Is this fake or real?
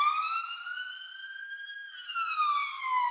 fake